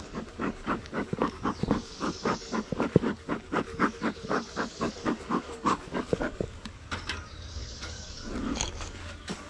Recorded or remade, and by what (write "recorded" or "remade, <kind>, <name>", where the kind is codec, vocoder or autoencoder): remade, codec, DAC